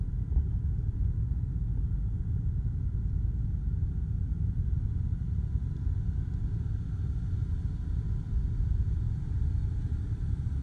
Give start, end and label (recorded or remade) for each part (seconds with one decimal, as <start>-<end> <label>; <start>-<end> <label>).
0.0-10.6 recorded